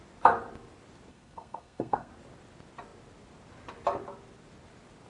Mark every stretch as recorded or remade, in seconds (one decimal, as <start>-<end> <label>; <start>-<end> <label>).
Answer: 0.0-1.1 recorded; 1.1-2.1 remade; 2.1-5.1 recorded